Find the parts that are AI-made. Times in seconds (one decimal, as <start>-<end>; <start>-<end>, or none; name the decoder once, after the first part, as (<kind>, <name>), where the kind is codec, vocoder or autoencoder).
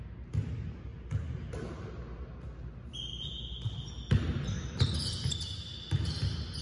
none